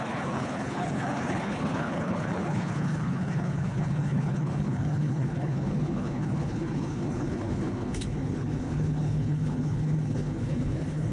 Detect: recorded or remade remade